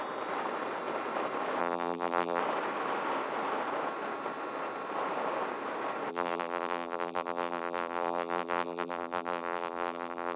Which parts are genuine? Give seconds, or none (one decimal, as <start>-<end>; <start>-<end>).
0.0-1.6; 2.4-6.1

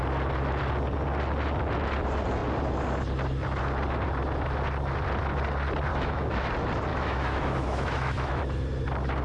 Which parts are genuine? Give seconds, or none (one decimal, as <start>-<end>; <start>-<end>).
0.0-5.9; 6.5-6.9; 8.4-9.2

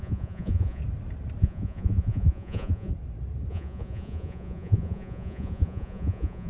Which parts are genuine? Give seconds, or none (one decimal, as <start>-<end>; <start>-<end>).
0.8-1.4; 2.9-3.5

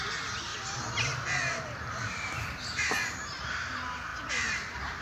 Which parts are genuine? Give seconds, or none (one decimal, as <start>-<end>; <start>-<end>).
0.0-0.5; 3.5-4.1

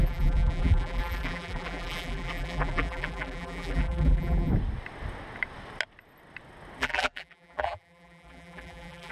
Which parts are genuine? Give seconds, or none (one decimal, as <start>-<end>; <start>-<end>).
4.5-6.8

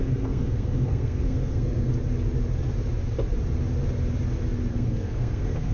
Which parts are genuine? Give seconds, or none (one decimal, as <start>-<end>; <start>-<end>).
1.9-4.7

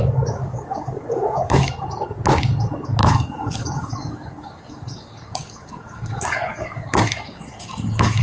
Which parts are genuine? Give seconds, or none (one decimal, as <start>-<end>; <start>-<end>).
1.7-3.0

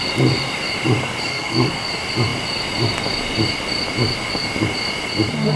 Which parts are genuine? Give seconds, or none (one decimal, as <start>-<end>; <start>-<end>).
0.0-1.3; 1.9-5.6